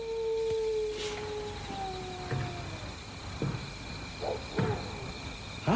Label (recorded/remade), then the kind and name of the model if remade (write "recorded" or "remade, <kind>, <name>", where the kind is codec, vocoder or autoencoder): recorded